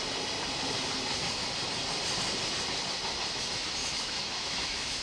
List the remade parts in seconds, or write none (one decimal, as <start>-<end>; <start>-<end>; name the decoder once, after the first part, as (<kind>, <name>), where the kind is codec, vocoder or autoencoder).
3.8-5.0 (autoencoder, DAC-VAE)